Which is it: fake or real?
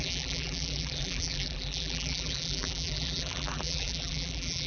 fake